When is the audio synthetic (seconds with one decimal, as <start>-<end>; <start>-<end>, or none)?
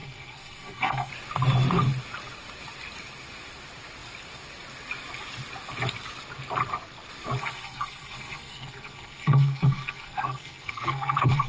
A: 0.0-1.1; 7.4-11.5